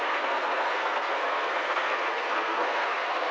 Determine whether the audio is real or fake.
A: fake